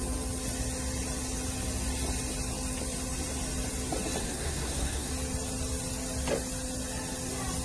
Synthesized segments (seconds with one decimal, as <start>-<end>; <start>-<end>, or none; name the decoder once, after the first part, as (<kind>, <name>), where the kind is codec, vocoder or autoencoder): 4.2-5.1 (codec, SNAC)